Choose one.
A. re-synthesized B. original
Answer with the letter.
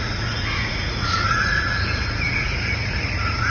A